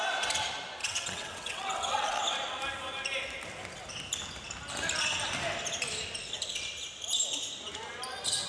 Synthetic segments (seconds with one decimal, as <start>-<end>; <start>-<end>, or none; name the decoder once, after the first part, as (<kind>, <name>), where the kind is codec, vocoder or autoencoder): 0.8-2.2 (vocoder, WaveNeXt)